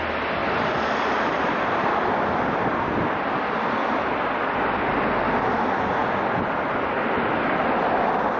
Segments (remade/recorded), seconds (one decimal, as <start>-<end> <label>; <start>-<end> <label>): 0.0-8.4 recorded